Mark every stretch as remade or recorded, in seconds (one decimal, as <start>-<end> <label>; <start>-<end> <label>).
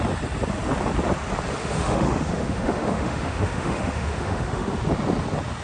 0.0-1.6 recorded; 1.6-4.8 remade; 4.8-5.6 recorded